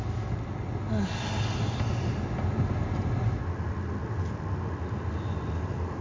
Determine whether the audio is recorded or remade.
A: recorded